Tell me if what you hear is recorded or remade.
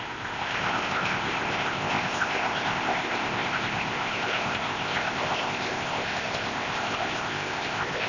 remade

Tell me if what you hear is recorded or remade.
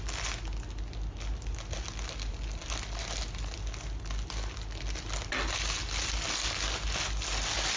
recorded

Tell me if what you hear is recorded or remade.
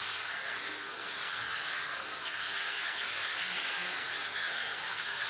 remade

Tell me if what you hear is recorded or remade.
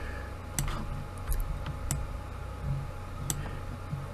recorded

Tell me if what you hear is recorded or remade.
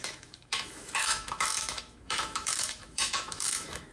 remade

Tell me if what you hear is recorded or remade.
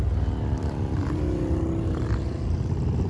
recorded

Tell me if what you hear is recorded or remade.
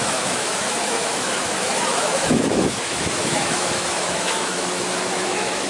remade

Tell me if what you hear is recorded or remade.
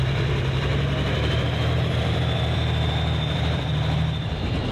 remade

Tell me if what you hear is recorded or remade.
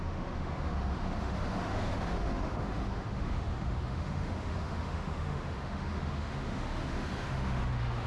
remade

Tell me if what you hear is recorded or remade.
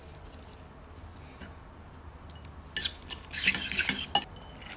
recorded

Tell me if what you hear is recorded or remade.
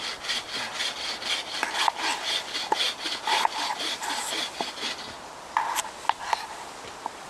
recorded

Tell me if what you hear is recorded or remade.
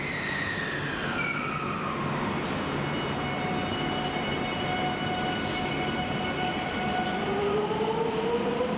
recorded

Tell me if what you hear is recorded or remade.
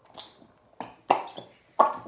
recorded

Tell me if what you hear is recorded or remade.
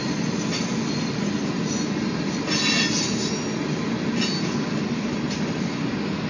recorded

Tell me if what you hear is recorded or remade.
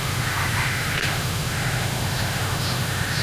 remade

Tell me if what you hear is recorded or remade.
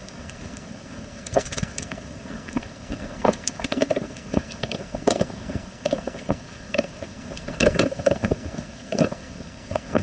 remade